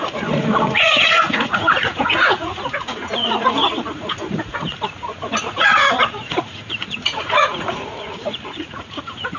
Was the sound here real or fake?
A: fake